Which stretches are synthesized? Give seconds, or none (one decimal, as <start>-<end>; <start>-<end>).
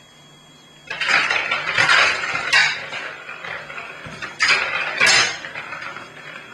none